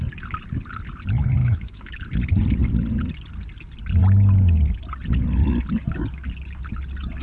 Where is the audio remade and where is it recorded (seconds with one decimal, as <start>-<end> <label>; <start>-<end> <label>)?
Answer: 0.0-1.4 recorded; 1.4-2.0 remade; 2.0-7.2 recorded